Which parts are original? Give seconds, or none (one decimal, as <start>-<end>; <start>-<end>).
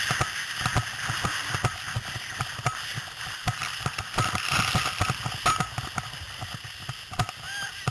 0.0-7.9